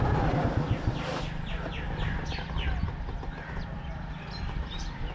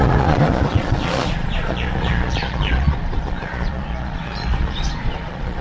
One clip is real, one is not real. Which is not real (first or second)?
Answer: second